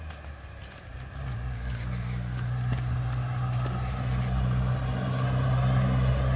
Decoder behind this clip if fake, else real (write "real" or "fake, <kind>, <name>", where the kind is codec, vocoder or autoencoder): real